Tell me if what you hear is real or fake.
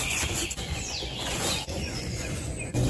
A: fake